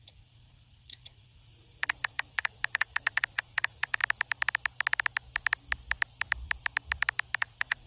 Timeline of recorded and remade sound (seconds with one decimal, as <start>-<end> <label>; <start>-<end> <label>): 0.0-4.0 remade; 4.0-7.4 recorded; 7.4-7.9 remade